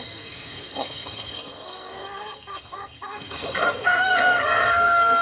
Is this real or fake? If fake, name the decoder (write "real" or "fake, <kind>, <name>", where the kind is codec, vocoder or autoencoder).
fake, codec, SNAC